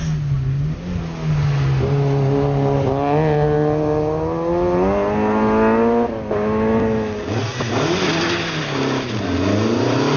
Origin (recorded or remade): recorded